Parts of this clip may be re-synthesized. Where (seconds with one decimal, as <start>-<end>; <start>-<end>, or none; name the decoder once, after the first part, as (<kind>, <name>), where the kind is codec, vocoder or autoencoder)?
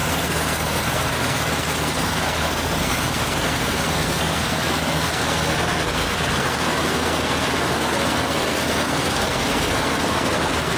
0.0-10.8 (codec, SNAC)